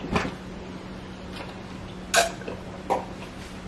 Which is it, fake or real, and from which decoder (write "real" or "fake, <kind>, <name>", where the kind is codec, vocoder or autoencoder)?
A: real